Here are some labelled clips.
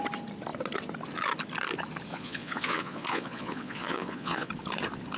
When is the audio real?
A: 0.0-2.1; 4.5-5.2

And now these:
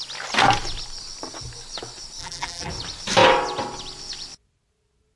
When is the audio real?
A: 0.0-2.2; 2.7-5.2